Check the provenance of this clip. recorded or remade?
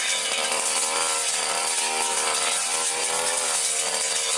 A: recorded